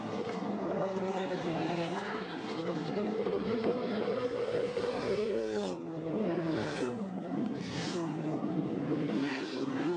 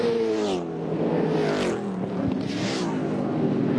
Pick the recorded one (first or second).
second